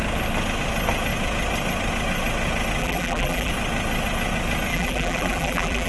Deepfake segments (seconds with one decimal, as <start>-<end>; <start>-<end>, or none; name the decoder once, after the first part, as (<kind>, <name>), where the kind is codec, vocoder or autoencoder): 2.8-3.5 (vocoder, BigVGAN v2); 4.7-5.9